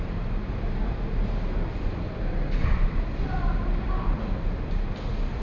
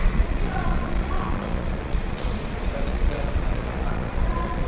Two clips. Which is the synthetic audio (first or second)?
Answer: second